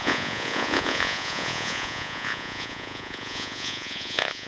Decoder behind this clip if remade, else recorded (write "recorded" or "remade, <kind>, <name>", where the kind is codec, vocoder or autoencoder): remade, vocoder, Vocos